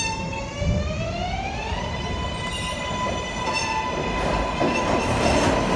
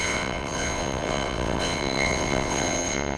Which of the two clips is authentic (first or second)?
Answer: first